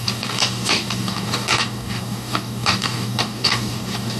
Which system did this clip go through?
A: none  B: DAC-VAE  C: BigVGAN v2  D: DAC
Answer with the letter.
D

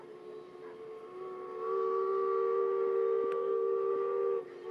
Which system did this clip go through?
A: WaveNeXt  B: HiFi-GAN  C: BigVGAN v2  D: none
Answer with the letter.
D